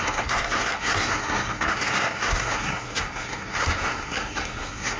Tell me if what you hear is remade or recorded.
remade